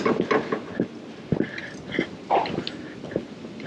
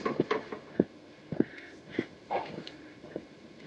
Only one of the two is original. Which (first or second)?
first